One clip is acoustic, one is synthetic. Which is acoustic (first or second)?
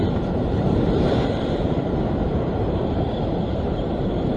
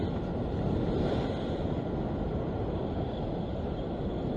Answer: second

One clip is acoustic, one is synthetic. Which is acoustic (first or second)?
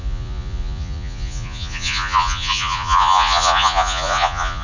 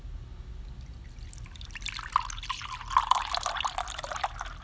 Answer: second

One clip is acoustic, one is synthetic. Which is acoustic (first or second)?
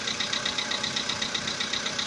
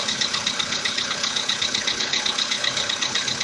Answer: first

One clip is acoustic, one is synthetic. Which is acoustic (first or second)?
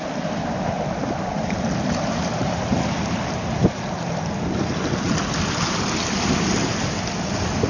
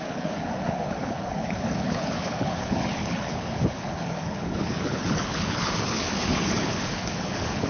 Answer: first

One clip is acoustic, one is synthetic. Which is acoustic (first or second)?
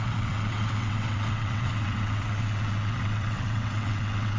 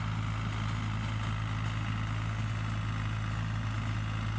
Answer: second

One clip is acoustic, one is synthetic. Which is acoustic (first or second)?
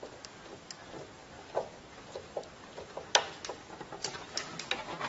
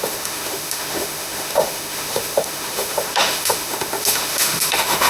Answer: first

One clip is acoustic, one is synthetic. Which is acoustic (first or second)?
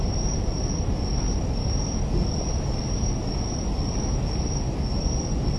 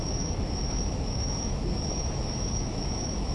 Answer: first